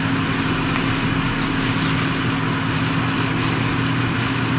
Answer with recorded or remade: recorded